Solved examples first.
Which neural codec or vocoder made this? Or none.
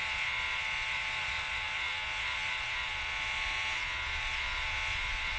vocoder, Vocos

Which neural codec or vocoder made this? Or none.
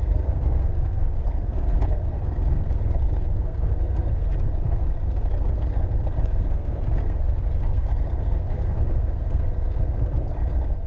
codec, SNAC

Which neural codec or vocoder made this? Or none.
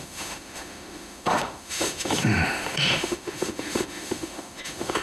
autoencoder, DAC-VAE